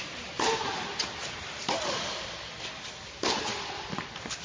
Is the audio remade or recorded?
recorded